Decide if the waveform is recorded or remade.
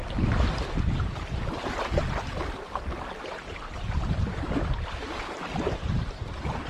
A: recorded